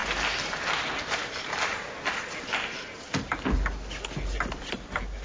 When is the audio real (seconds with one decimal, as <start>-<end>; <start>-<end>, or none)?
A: 0.0-5.2